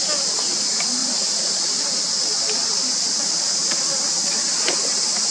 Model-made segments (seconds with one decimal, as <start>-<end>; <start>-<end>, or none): 1.0-1.9; 2.6-3.8